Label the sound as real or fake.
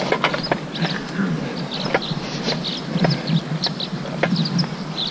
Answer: real